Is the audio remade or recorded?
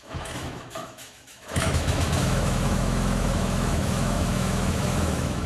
remade